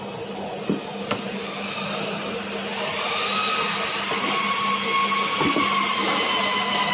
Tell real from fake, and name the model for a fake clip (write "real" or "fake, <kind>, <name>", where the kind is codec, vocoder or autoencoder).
real